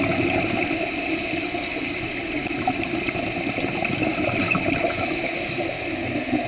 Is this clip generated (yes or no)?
no